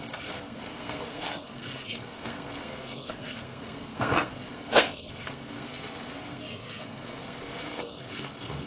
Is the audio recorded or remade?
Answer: remade